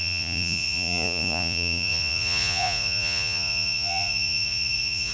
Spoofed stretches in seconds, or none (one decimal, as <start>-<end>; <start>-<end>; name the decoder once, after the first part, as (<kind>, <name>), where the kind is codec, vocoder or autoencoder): 0.0-5.1 (vocoder, Vocos)